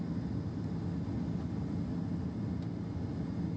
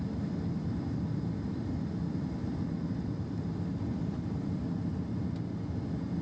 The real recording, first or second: first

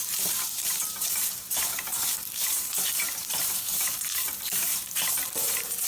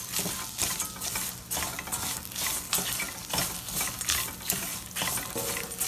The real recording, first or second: second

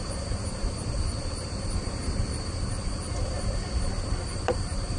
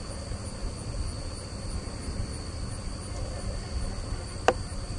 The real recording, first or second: second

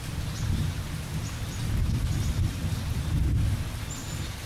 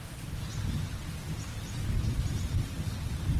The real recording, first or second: first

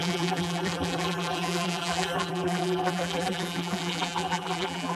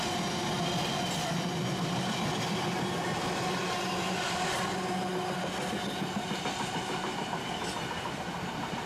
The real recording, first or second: second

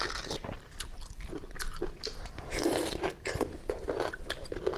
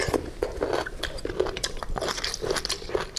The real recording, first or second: first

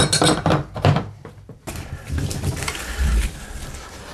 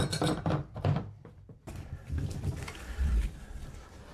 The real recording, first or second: first